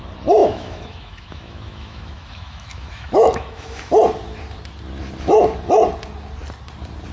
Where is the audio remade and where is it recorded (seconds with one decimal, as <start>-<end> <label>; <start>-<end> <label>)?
0.0-0.4 recorded; 0.4-3.8 remade; 3.8-7.1 recorded